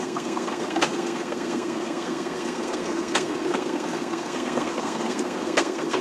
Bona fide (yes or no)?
no